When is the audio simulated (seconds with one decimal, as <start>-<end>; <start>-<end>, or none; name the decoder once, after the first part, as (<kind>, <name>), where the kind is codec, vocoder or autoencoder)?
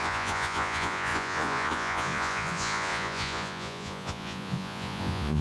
0.0-5.4 (vocoder, Vocos)